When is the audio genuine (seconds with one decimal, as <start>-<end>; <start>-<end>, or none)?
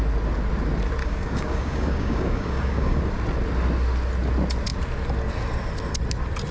0.0-1.0; 3.0-6.5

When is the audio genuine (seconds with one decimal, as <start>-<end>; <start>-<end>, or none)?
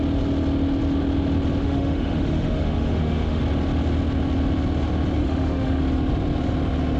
0.0-1.6; 3.4-5.2; 5.8-7.0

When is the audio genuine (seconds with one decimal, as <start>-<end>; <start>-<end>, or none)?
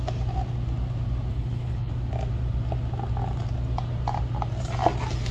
0.0-1.3; 1.9-5.3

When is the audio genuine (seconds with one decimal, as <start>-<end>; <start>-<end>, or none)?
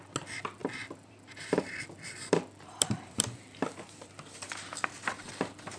0.0-0.6; 4.1-5.8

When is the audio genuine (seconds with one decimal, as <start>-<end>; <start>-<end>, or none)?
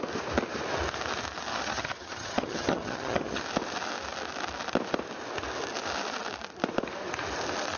0.0-1.5; 3.4-7.8